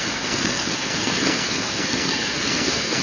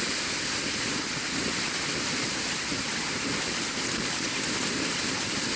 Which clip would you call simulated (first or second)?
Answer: first